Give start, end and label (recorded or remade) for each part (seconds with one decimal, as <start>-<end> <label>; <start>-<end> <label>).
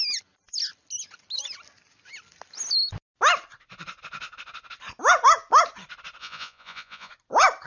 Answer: 0.0-6.2 recorded; 6.2-7.1 remade; 7.1-7.7 recorded